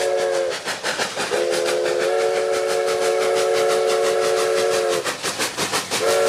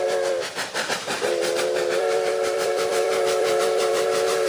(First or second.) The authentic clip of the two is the first